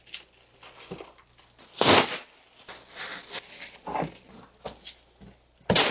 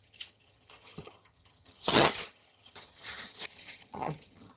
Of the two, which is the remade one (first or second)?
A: second